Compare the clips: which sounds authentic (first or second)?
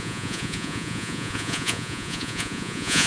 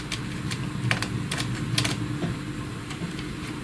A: second